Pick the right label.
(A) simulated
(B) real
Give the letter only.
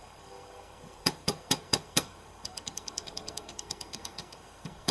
A